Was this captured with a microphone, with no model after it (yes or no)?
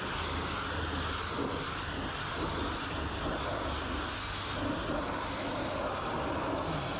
yes